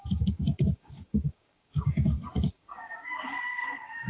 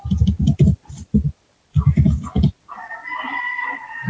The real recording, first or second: second